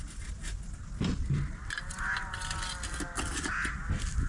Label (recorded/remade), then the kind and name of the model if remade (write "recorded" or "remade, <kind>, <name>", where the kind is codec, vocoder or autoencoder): recorded